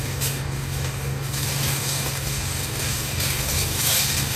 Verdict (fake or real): fake